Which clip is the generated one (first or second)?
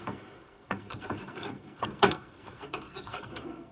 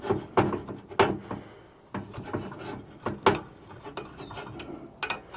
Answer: first